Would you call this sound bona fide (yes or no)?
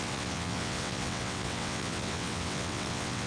no